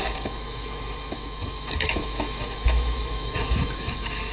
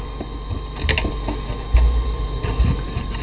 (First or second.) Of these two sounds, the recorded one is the second